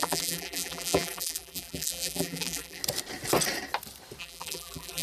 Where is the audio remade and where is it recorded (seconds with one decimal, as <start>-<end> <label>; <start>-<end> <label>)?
0.0-2.8 remade; 2.8-4.2 recorded; 4.2-5.0 remade